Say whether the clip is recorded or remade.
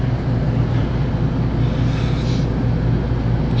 recorded